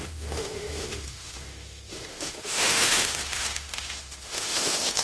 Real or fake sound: fake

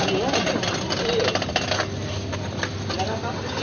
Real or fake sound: real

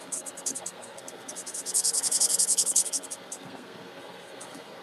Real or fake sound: fake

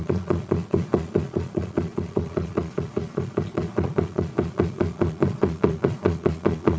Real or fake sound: fake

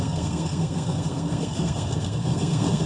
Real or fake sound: fake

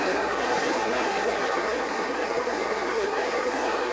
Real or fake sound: fake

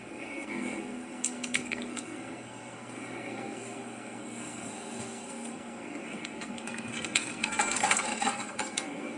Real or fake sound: fake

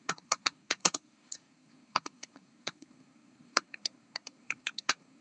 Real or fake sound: fake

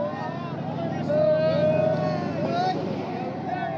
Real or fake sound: real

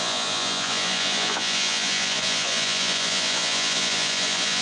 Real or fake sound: fake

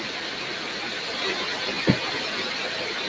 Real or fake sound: real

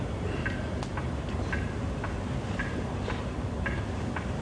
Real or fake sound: real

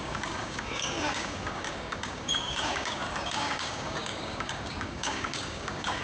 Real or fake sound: fake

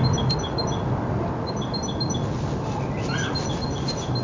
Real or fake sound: real